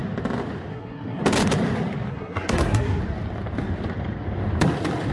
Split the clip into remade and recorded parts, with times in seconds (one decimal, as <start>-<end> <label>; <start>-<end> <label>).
0.0-0.7 recorded; 0.7-1.2 remade; 1.2-2.1 recorded; 2.1-3.0 remade; 3.0-5.1 recorded